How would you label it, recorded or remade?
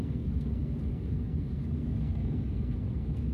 remade